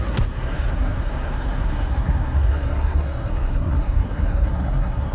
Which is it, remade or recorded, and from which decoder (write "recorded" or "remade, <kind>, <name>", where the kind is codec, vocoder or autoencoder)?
remade, codec, SNAC